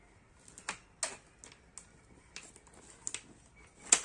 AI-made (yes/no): no